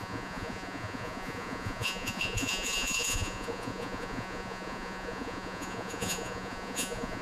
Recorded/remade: remade